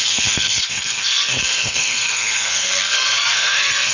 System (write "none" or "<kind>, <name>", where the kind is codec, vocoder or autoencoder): codec, SNAC